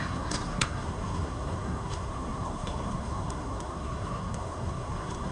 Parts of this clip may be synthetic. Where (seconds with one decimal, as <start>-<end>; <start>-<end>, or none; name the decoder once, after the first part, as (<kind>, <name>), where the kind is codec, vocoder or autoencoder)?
0.0-5.3 (codec, SNAC)